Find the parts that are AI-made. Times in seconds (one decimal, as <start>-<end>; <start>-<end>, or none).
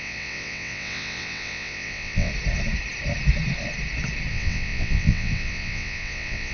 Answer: 0.0-2.3; 4.3-6.5